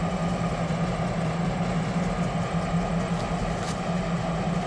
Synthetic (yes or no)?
no